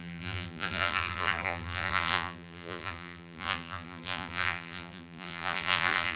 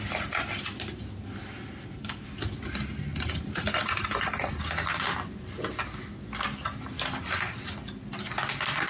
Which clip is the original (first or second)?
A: second